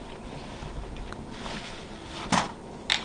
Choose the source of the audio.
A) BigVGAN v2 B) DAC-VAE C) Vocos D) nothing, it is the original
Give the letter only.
D